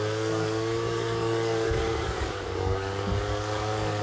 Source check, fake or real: fake